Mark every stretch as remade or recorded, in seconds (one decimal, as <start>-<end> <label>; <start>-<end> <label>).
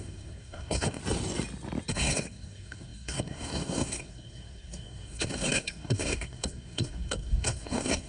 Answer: 0.0-1.0 remade; 1.0-1.9 recorded; 1.9-8.1 remade